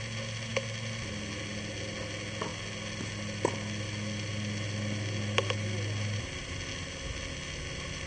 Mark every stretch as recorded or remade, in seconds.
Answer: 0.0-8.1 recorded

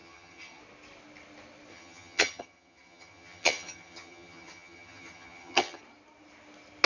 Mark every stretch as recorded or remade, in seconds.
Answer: 0.0-0.6 remade; 0.6-1.7 recorded; 1.7-5.8 remade; 5.8-6.9 recorded